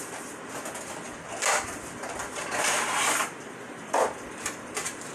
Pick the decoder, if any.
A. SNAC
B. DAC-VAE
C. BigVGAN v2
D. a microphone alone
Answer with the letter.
D